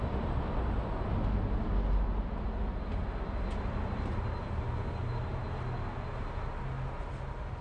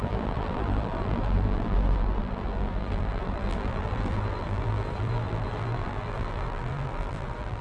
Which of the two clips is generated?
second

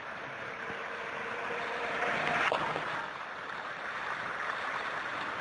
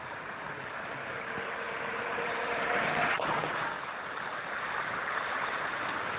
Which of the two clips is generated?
first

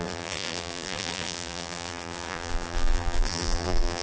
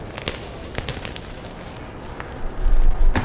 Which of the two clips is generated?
first